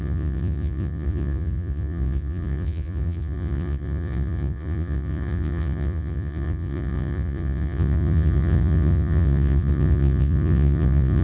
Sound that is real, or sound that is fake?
fake